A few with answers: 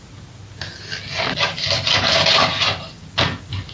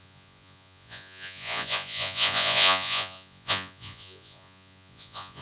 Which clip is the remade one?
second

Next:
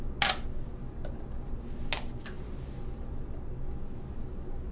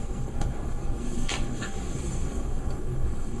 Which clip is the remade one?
second